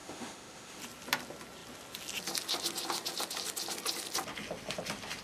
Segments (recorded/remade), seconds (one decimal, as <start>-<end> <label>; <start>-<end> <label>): 0.0-0.8 remade; 0.8-5.2 recorded